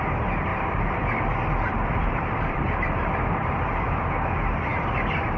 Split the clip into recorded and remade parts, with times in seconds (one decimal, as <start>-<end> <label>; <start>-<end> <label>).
0.0-0.5 recorded; 0.5-3.7 remade; 3.7-5.4 recorded